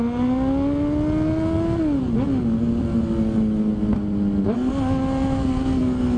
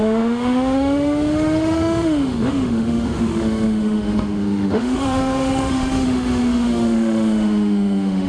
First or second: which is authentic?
first